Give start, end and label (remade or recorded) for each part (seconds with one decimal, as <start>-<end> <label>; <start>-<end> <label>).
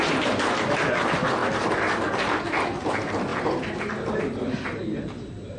0.0-5.6 recorded